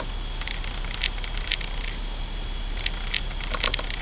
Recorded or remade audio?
recorded